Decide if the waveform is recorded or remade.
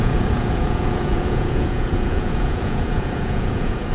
remade